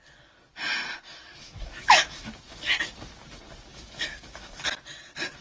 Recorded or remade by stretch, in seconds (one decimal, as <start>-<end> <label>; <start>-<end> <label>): 0.0-1.3 recorded; 1.3-2.3 remade; 2.3-3.7 recorded; 3.7-4.6 remade; 4.6-5.4 recorded